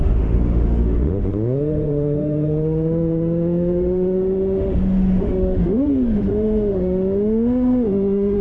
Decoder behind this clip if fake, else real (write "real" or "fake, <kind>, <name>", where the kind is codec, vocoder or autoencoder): fake, autoencoder, DAC-VAE